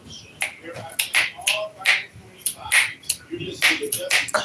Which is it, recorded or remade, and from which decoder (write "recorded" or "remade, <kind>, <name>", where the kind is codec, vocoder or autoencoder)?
recorded